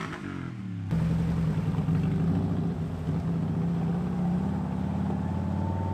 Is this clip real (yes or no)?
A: yes